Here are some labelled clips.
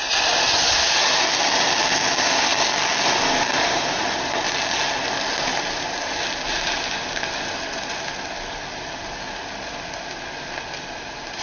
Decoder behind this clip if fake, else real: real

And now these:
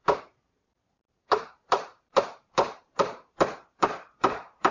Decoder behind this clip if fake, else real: fake, vocoder, BigVGAN v2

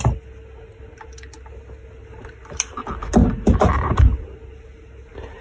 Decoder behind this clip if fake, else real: real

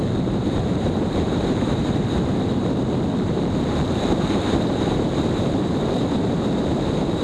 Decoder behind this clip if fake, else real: fake, vocoder, BigVGAN v2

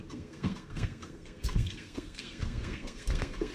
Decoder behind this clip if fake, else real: fake, codec, SNAC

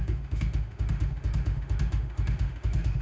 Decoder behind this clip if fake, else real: fake, autoencoder, DAC-VAE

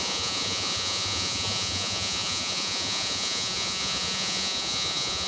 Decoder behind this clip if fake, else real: fake, vocoder, Vocos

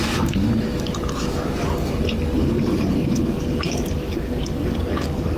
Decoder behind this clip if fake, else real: fake, codec, DAC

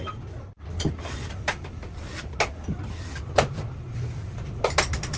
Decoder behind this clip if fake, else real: real